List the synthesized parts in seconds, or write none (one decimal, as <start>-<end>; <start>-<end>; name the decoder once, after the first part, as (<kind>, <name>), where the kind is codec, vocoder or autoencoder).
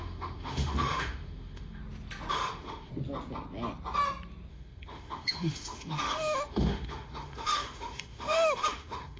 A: 0.0-1.8 (autoencoder, DAC-VAE); 2.3-2.9; 4.5-9.2